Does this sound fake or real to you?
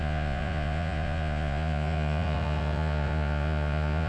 fake